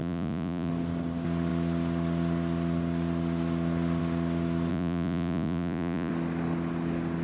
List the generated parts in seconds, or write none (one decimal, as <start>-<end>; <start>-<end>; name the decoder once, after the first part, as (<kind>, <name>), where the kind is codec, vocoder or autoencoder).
0.0-0.7 (vocoder, Vocos); 4.7-6.1